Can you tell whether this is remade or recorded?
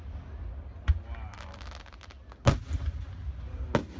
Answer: recorded